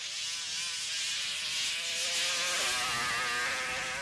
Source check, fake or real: real